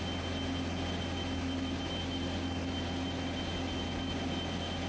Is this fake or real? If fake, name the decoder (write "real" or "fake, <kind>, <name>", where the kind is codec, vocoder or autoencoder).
real